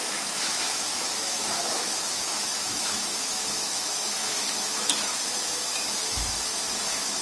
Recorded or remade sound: remade